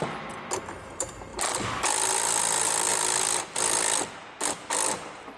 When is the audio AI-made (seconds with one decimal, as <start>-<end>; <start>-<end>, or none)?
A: none